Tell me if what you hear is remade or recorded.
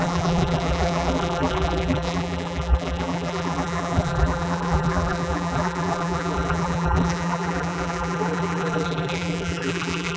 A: remade